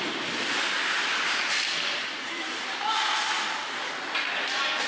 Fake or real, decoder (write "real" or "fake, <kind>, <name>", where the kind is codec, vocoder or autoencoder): fake, vocoder, BigVGAN v2